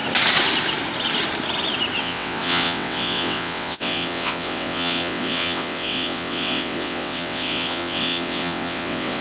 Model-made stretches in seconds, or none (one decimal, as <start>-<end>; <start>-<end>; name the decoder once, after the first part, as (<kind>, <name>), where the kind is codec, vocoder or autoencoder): 2.0-9.2 (vocoder, WaveNeXt)